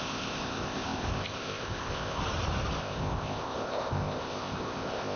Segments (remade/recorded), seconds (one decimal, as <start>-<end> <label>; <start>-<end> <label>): 0.0-2.2 remade; 2.2-2.8 recorded; 2.8-5.2 remade